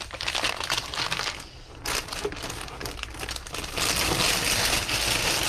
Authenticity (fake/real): real